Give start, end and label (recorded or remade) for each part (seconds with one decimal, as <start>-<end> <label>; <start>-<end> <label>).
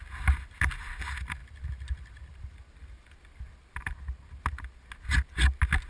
0.0-5.9 recorded